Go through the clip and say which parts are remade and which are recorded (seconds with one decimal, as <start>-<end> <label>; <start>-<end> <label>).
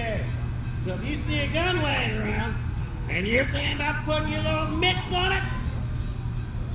0.0-1.9 recorded; 1.9-2.4 remade; 2.4-2.8 recorded; 2.8-3.8 remade; 3.8-6.7 recorded